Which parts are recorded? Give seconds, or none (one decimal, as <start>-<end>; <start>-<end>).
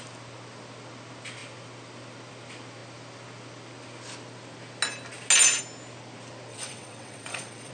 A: 0.0-6.5